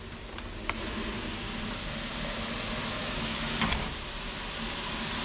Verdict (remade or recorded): recorded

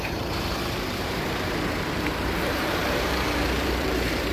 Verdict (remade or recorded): remade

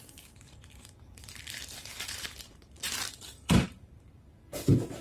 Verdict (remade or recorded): remade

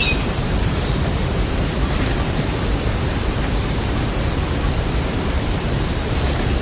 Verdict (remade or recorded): remade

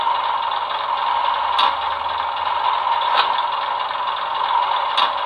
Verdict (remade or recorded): recorded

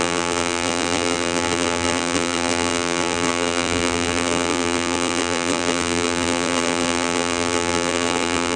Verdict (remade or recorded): remade